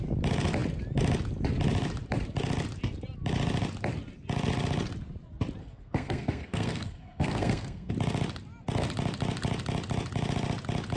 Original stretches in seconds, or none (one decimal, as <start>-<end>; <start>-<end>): 0.0-5.6; 7.9-11.0